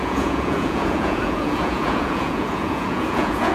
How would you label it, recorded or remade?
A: remade